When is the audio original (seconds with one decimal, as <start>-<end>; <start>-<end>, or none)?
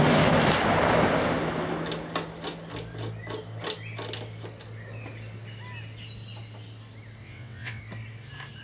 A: 0.0-7.2; 7.8-8.6